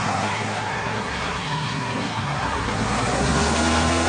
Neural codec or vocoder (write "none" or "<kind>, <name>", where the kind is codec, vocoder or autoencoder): codec, SNAC